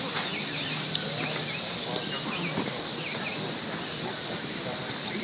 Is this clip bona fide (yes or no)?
yes